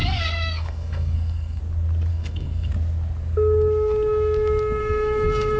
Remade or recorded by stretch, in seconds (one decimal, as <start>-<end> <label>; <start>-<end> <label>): 0.0-1.6 remade; 1.6-2.1 recorded; 2.1-2.7 remade; 2.7-4.8 recorded; 4.8-5.6 remade